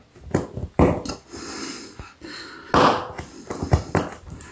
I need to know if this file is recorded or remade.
recorded